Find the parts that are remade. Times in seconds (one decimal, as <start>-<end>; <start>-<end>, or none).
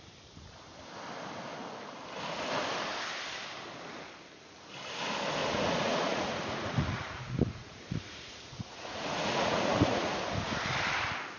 5.4-10.2